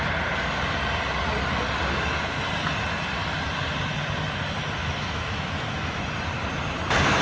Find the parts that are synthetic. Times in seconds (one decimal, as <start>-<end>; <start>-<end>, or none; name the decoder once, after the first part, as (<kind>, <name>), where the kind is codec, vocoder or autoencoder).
4.8-6.0 (autoencoder, DAC-VAE)